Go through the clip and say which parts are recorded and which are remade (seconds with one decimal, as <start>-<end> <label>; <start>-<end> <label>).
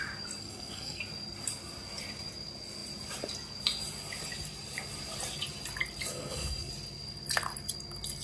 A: 0.0-0.4 recorded; 0.4-1.0 remade; 1.0-6.1 recorded; 6.1-6.7 remade; 6.7-8.2 recorded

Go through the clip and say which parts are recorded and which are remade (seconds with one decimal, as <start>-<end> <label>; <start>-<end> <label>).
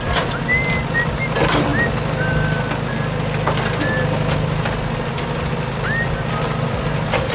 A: 0.0-7.3 recorded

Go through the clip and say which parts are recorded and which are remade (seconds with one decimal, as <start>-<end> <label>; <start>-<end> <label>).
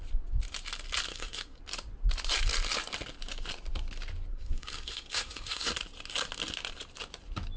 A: 0.0-1.1 recorded; 1.1-1.6 remade; 1.6-4.3 recorded; 4.3-5.7 remade; 5.7-7.6 recorded